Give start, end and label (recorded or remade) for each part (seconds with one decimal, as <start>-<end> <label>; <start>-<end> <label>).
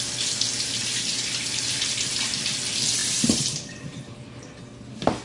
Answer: 0.0-0.8 recorded; 0.8-2.4 remade; 2.4-3.0 recorded; 3.0-4.2 remade; 4.2-5.2 recorded